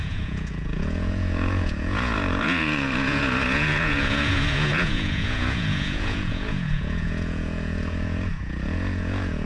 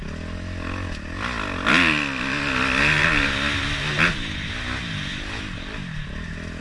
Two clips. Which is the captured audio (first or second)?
second